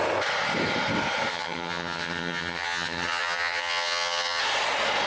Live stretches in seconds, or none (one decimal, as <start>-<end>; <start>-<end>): 0.0-1.3; 4.4-5.1